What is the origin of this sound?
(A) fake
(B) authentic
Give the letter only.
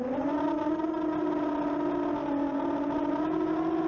B